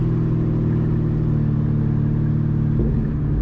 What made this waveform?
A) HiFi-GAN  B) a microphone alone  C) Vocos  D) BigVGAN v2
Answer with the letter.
B